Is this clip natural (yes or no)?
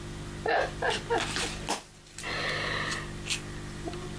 yes